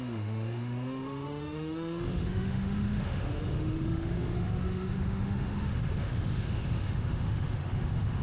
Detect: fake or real fake